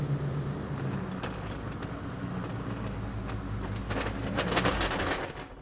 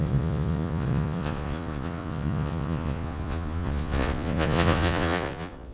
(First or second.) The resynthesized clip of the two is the second